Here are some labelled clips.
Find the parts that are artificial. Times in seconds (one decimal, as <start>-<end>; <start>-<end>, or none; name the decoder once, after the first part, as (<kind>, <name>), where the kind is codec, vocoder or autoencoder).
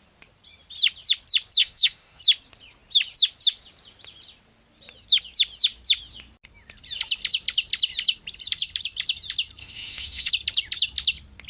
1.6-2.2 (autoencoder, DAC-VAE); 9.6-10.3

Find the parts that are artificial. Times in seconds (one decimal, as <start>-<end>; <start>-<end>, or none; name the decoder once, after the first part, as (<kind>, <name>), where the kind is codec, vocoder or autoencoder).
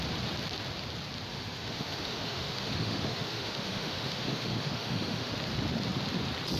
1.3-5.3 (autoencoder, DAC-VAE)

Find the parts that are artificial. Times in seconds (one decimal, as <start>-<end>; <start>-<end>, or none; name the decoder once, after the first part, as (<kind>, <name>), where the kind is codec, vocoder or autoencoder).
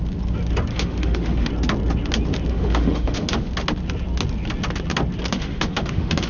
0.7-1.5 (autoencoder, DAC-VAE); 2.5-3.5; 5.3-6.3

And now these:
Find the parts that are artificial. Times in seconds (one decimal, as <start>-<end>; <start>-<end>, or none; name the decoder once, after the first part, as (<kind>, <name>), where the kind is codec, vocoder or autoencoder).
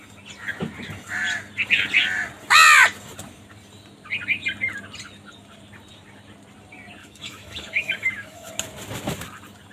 7.0-8.5 (autoencoder, DAC-VAE)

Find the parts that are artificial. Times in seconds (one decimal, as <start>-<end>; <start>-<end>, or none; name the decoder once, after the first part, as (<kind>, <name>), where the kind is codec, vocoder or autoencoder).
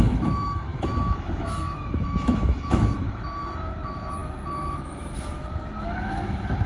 0.0-6.7 (autoencoder, DAC-VAE)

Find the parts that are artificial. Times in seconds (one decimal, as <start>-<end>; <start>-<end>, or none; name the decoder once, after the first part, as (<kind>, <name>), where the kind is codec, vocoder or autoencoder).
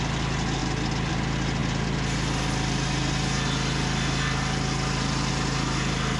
none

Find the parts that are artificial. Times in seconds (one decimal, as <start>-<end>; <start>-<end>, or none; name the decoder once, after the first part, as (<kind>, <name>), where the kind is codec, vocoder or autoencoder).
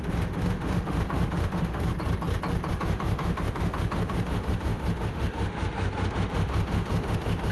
0.0-1.9 (autoencoder, DAC-VAE); 2.7-7.5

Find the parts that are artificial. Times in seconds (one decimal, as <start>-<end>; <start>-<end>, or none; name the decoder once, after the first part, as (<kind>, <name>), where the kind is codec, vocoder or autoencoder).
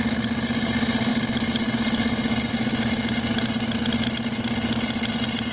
none